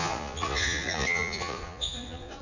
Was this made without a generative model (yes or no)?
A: no